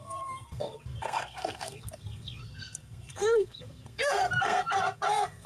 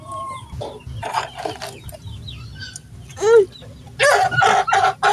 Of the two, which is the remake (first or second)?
first